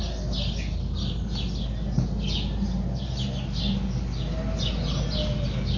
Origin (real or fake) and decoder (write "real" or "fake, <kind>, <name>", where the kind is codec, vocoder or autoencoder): real